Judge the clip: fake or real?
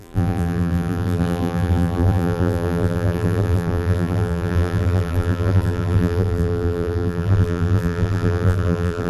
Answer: fake